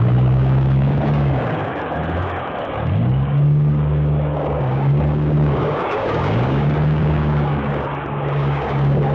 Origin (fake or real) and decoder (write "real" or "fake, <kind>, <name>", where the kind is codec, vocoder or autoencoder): fake, codec, DAC